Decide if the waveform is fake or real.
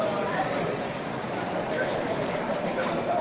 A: fake